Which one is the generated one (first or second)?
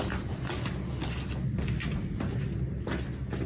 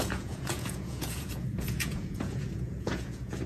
second